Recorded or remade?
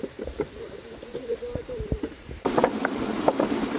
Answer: remade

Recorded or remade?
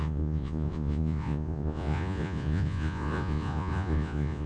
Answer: remade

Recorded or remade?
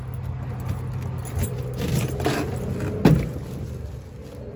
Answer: recorded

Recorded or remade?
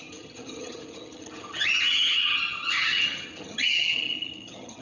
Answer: remade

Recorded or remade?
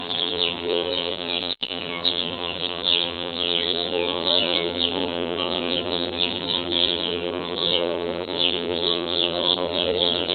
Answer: remade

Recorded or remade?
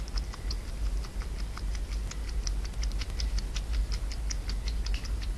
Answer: recorded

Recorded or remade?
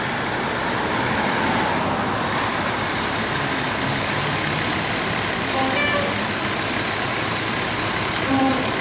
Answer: recorded